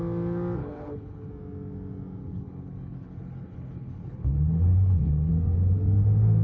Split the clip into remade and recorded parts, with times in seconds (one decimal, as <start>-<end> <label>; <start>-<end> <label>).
0.0-0.6 recorded; 0.6-1.3 remade; 1.3-2.2 recorded; 2.2-5.3 remade; 5.3-6.4 recorded